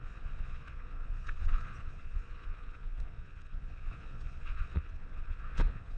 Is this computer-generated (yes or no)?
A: yes